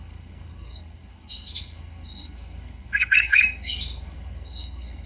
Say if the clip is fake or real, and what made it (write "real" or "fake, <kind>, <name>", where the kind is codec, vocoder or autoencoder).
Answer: fake, codec, SNAC